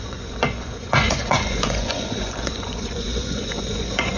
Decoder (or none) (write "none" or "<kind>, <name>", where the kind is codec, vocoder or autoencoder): vocoder, Vocos